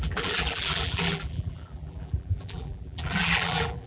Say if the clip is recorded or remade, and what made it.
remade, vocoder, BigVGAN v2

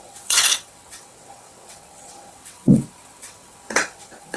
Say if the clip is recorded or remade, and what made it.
remade, vocoder, WaveNeXt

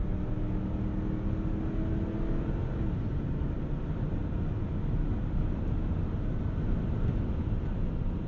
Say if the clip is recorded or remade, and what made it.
recorded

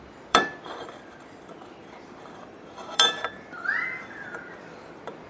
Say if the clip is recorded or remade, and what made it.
remade, vocoder, BigVGAN v2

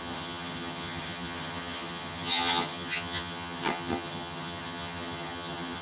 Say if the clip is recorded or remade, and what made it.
remade, vocoder, HiFi-GAN